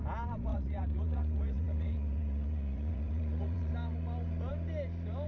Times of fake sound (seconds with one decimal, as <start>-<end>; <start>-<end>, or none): 0.5-3.7